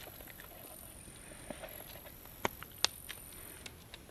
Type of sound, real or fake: real